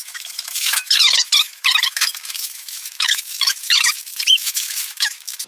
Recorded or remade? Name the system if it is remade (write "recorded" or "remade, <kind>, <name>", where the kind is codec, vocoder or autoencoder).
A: remade, autoencoder, DAC-VAE